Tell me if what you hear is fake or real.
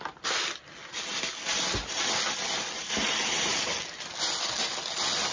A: real